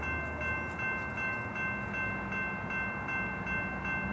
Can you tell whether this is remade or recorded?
recorded